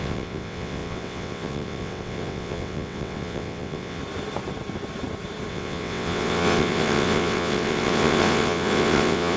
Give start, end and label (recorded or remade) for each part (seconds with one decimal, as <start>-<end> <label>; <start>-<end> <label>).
0.0-4.0 remade; 4.0-5.5 recorded; 5.5-9.4 remade